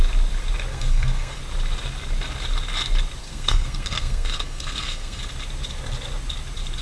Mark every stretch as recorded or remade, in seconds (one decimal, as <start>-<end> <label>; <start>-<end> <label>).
0.0-0.7 recorded; 0.7-1.4 remade; 1.4-3.2 recorded; 3.2-5.2 remade; 5.2-6.8 recorded